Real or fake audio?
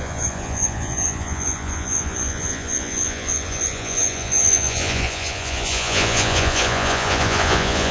fake